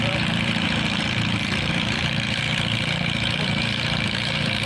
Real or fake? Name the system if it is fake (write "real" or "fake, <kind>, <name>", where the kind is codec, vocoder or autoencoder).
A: fake, vocoder, BigVGAN v2